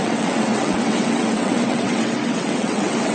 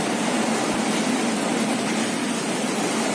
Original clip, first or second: second